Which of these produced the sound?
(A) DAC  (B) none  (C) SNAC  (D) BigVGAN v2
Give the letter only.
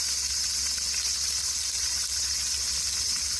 B